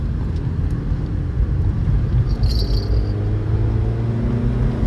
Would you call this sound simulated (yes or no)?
no